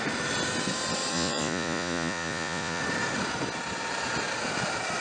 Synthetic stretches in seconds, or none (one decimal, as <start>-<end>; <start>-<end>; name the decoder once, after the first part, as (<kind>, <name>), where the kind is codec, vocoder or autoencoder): 1.1-2.8 (vocoder, Vocos)